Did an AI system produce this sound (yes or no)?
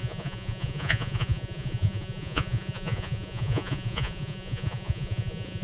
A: yes